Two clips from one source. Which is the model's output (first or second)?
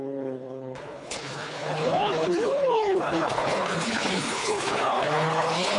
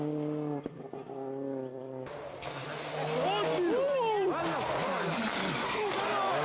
first